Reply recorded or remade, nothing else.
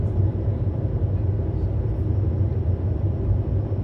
recorded